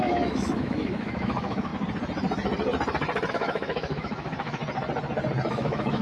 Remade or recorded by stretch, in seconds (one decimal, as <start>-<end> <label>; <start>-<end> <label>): 0.0-1.7 remade; 1.7-3.3 recorded; 3.3-4.6 remade; 4.6-5.5 recorded; 5.5-6.0 remade